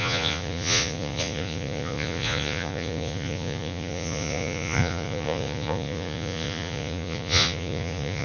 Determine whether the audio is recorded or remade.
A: remade